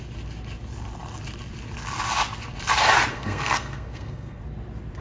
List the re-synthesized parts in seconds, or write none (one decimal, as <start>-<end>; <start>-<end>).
3.1-4.4